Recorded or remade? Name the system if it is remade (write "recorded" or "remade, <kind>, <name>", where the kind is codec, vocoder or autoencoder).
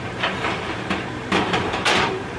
remade, vocoder, BigVGAN v2